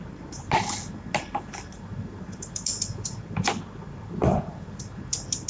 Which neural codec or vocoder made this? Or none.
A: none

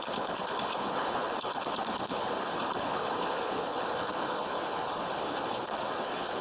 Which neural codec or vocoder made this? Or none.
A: codec, HILCodec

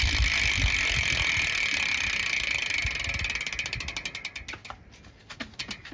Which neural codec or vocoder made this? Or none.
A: none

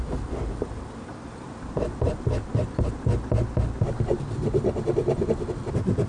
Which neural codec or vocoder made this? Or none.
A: none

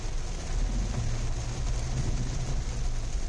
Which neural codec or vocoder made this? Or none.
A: none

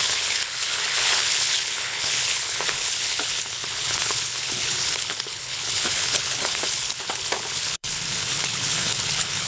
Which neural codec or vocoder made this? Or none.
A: codec, HILCodec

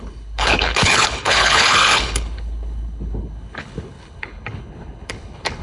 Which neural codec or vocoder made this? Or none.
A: codec, HILCodec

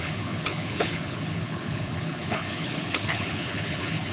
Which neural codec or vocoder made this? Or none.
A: codec, HILCodec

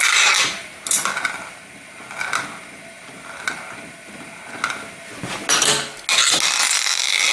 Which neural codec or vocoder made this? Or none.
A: none